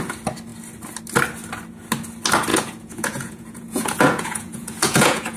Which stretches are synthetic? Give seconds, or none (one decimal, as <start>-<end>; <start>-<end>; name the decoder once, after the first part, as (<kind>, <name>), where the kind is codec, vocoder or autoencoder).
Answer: 2.5-5.4 (vocoder, Vocos)